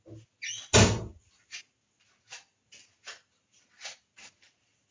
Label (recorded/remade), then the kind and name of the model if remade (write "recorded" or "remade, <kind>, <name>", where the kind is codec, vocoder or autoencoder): recorded